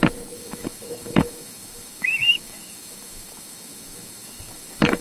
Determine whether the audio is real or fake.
fake